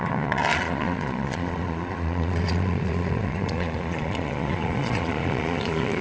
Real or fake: fake